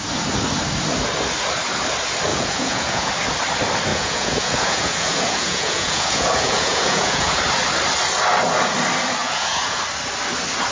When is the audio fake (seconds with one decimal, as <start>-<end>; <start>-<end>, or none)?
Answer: 2.3-3.1; 3.9-7.4; 9.2-9.8